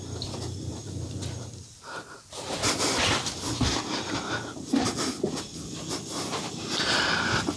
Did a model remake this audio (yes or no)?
no